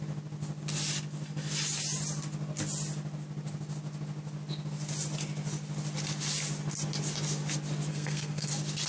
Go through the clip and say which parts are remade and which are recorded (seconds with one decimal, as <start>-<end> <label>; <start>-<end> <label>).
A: 0.0-7.9 recorded; 7.9-8.5 remade; 8.5-8.9 recorded